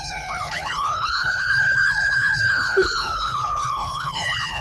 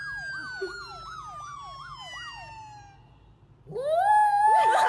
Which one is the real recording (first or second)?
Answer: second